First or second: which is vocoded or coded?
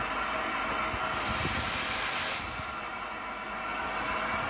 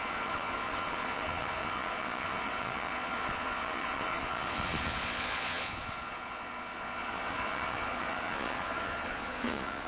second